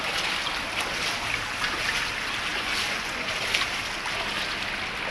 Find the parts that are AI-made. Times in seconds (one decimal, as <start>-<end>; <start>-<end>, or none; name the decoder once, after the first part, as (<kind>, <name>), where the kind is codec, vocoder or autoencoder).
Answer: 2.5-3.3 (vocoder, Vocos)